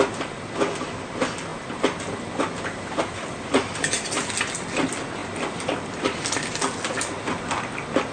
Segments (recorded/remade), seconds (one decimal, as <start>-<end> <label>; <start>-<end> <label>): 0.0-1.5 recorded; 1.5-3.9 remade; 3.9-5.2 recorded; 5.2-6.4 remade; 6.4-8.1 recorded